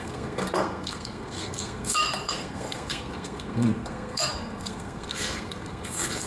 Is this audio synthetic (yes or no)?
yes